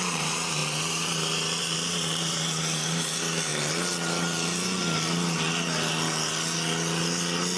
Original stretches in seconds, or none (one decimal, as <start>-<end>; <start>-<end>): 3.5-7.6